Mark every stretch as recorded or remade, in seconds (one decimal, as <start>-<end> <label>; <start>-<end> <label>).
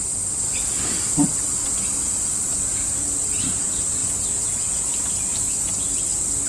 0.0-6.5 recorded